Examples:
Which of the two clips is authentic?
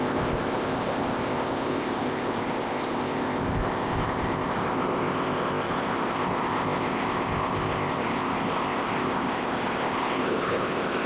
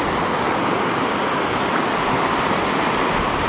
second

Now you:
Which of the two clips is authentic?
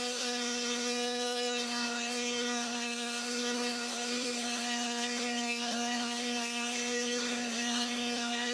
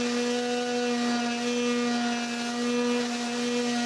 second